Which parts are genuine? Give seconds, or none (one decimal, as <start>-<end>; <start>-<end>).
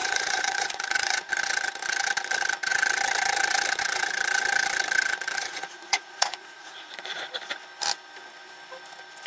1.3-5.4; 7.3-9.3